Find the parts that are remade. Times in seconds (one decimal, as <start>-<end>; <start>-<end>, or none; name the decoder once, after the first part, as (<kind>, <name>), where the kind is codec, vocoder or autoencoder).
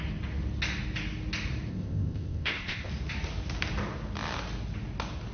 1.7-2.9 (codec, ZipCodec)